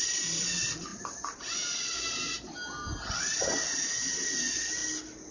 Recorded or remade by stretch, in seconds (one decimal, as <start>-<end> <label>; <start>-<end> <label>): 0.0-5.3 recorded